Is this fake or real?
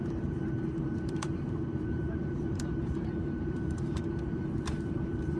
fake